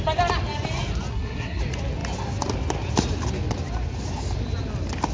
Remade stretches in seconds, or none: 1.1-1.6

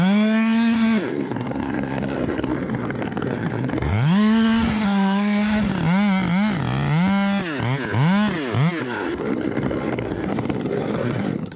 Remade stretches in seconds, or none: 0.0-5.7; 8.8-11.6